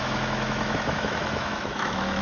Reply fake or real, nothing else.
fake